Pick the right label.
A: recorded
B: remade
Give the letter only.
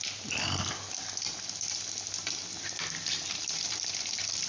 A